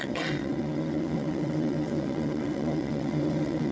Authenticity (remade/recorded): remade